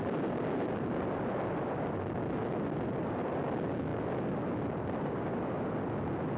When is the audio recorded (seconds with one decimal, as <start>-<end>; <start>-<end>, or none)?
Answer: 0.0-6.4

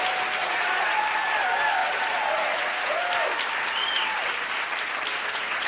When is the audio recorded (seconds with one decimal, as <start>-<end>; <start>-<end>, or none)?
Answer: 0.0-0.4; 1.0-1.8; 3.0-5.1

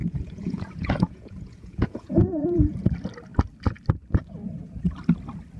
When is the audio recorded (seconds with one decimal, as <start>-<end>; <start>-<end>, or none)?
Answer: 2.7-5.6

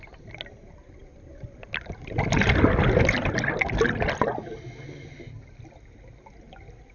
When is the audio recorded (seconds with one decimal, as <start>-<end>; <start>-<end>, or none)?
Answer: 0.0-6.9